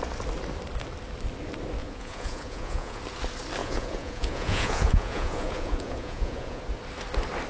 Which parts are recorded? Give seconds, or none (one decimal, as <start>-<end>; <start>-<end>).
0.0-1.8; 3.0-3.6; 6.6-7.5